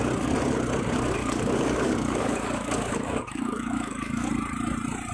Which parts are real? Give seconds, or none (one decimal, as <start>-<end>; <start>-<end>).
0.0-1.2; 4.3-5.1